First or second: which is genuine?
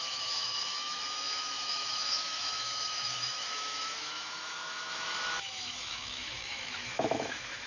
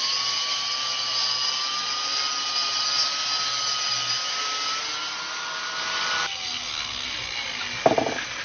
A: second